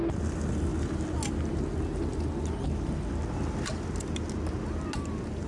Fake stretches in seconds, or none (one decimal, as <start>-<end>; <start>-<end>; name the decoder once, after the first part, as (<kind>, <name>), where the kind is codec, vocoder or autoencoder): none